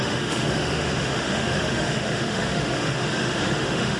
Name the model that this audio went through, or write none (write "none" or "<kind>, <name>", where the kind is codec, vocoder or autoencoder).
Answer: autoencoder, DAC-VAE